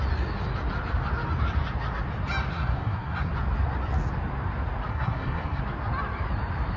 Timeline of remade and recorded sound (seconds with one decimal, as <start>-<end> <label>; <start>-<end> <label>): 0.0-2.5 recorded; 2.5-3.3 remade; 3.3-4.9 recorded; 4.9-5.6 remade; 5.6-6.8 recorded

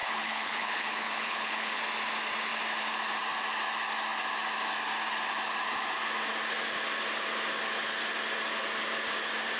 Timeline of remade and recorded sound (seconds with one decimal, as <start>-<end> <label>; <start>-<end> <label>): 0.0-1.8 remade; 1.8-9.6 recorded

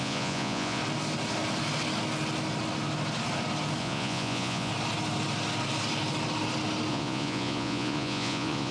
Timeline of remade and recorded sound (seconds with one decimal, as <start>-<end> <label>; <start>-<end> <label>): 0.0-0.8 remade; 0.8-3.8 recorded; 3.8-4.7 remade; 4.7-6.9 recorded; 6.9-8.7 remade